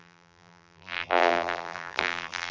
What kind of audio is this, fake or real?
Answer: fake